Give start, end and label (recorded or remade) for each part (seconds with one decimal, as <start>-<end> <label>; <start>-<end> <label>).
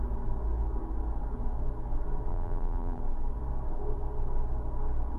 0.0-2.3 recorded; 2.3-3.0 remade; 3.0-5.2 recorded